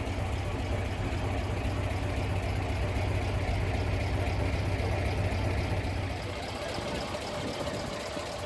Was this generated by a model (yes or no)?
no